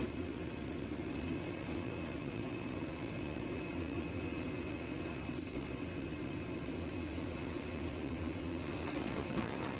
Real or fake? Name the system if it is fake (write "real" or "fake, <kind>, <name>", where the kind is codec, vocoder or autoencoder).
fake, vocoder, WaveNeXt